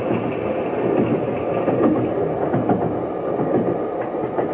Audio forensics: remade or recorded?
recorded